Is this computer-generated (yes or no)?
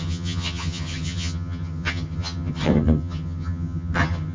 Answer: yes